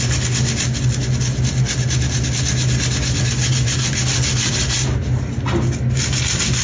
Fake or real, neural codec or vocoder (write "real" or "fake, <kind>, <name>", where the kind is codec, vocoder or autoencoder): real